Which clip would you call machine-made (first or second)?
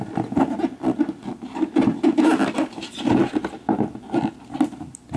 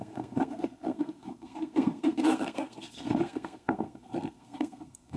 second